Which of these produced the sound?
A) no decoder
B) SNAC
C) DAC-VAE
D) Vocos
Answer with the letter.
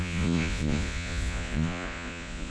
D